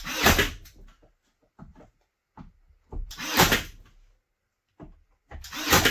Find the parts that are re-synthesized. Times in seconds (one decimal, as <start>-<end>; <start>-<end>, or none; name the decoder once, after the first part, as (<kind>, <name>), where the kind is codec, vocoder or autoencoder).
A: none